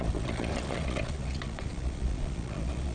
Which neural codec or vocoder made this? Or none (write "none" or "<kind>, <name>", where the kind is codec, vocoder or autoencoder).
vocoder, Vocos